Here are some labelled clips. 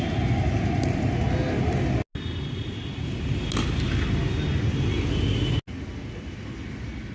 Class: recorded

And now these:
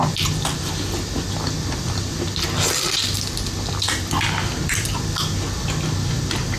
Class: recorded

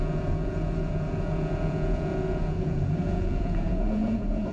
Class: remade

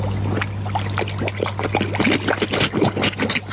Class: recorded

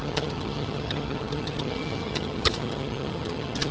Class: remade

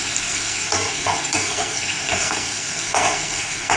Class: remade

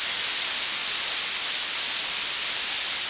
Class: recorded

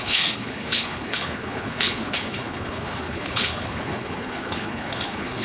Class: remade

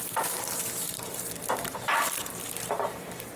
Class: remade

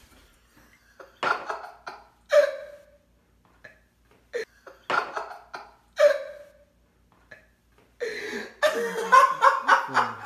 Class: recorded